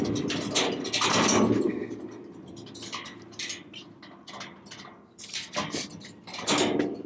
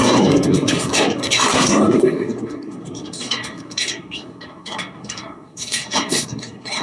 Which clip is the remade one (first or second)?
second